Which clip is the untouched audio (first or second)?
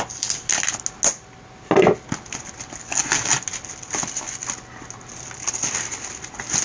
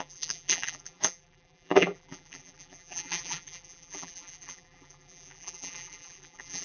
first